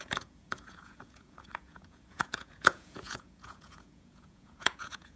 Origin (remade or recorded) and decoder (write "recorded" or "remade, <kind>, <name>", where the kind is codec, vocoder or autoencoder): remade, vocoder, Vocos